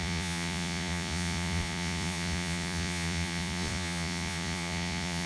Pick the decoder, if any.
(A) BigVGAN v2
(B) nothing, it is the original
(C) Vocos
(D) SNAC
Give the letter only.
C